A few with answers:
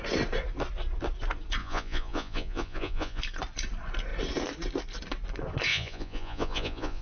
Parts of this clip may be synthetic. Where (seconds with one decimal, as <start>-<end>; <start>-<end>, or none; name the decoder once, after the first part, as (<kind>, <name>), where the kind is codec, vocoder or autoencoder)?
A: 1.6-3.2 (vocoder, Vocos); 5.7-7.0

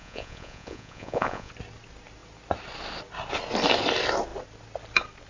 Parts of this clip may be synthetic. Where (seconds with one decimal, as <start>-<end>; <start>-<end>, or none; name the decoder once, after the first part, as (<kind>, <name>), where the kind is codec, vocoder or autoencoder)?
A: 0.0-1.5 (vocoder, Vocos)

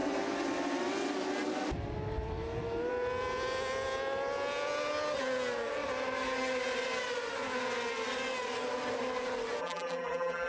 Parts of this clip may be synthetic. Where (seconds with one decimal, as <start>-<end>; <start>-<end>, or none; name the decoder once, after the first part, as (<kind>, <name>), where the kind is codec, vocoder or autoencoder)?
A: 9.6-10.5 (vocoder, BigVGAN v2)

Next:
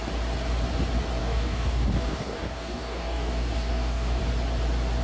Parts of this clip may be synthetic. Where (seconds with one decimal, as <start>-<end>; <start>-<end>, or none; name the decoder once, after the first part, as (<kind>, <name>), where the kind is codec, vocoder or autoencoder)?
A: 1.2-4.2 (codec, DAC)

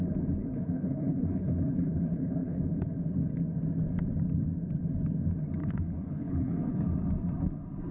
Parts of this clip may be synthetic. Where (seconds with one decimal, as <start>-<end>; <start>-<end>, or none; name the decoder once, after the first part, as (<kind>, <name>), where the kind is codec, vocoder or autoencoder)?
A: 0.4-2.6 (codec, HILCodec); 5.6-6.8